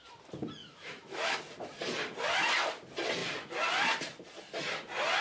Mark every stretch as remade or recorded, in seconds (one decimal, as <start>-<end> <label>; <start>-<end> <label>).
0.0-0.6 recorded; 0.6-1.4 remade; 1.4-5.2 recorded